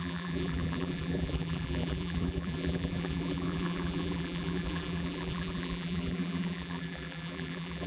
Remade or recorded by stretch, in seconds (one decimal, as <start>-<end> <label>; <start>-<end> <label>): 0.0-7.9 remade